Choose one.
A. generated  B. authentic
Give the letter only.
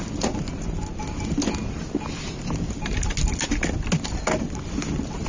B